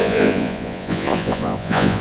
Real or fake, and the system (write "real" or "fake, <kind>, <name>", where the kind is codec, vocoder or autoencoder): fake, vocoder, Vocos